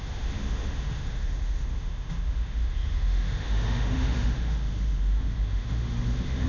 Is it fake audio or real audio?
fake